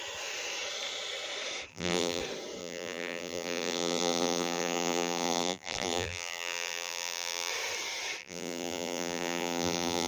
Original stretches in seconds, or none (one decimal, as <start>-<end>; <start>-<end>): 0.0-1.7; 2.2-2.6; 7.5-8.2